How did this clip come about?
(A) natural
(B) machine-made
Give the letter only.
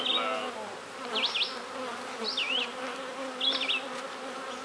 A